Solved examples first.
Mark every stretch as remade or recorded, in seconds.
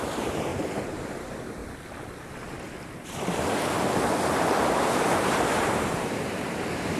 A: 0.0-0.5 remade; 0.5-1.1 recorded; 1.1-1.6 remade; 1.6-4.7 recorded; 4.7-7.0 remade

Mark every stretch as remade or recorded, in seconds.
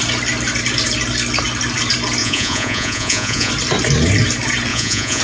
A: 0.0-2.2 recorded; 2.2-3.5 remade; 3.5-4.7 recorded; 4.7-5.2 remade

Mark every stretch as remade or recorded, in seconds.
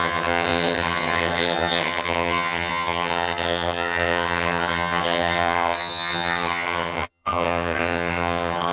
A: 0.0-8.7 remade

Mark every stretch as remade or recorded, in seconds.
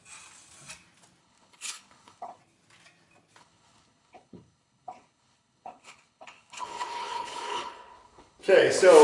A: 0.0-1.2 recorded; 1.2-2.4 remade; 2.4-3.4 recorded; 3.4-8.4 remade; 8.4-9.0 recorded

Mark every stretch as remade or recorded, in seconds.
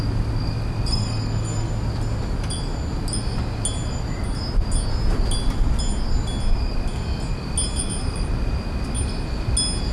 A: 0.0-0.9 recorded; 0.9-1.7 remade; 1.7-9.9 recorded